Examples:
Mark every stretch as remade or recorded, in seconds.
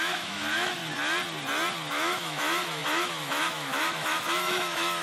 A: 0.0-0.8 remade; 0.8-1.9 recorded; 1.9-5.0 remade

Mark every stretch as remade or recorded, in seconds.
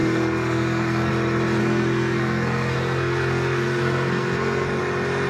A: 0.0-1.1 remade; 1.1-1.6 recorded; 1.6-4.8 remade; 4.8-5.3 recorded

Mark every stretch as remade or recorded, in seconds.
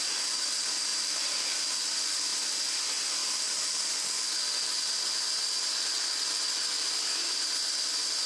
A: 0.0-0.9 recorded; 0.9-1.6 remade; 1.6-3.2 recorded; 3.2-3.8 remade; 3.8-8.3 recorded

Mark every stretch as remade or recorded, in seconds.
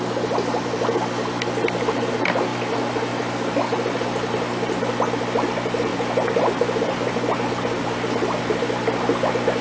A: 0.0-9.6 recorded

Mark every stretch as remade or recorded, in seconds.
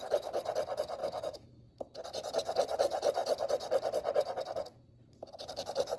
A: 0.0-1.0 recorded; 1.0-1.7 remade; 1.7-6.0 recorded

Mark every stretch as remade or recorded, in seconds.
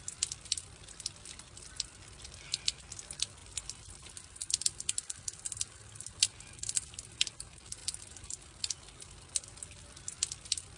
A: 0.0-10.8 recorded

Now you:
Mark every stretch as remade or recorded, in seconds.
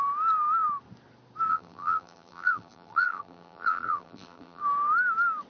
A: 0.0-1.5 recorded; 1.5-4.6 remade; 4.6-5.5 recorded